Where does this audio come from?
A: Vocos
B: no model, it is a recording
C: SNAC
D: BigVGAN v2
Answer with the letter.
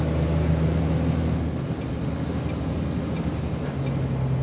B